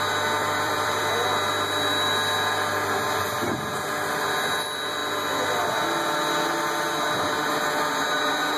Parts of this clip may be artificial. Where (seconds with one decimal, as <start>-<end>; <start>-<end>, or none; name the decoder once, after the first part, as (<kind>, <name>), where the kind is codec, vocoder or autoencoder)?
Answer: 0.4-1.1 (vocoder, BigVGAN v2)